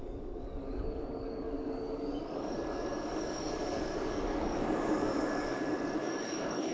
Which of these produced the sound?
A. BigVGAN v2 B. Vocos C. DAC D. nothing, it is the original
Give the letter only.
C